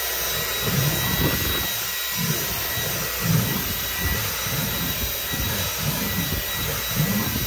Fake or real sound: real